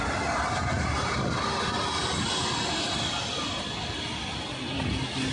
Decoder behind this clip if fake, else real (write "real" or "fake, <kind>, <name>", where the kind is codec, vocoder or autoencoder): real